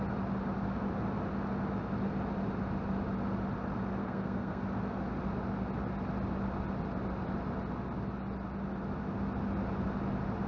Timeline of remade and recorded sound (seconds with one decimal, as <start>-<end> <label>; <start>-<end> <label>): 0.0-4.0 recorded; 4.0-4.6 remade; 4.6-10.5 recorded